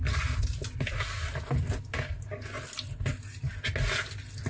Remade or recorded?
recorded